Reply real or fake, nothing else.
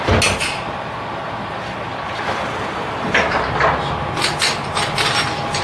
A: real